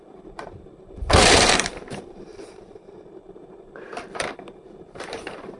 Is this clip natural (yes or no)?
no